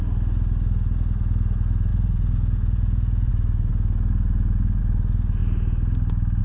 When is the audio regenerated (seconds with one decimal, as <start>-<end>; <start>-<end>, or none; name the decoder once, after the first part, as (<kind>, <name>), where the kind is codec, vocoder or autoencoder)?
1.9-3.3 (vocoder, Vocos)